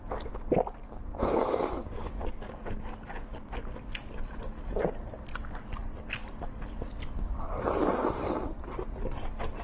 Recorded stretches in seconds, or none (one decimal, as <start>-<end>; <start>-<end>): 0.0-9.6